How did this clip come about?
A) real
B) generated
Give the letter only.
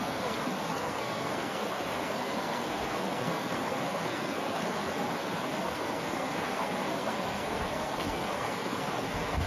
B